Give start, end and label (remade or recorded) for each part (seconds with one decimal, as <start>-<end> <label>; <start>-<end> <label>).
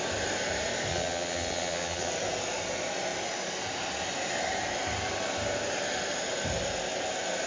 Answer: 0.0-0.9 recorded; 0.9-2.1 remade; 2.1-7.5 recorded